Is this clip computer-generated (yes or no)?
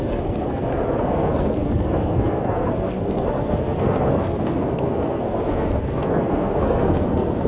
yes